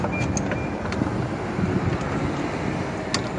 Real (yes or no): yes